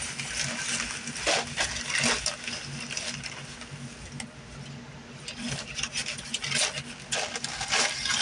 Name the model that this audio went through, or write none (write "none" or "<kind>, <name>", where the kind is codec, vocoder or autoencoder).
none